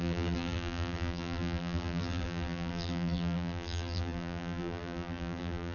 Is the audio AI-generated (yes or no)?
yes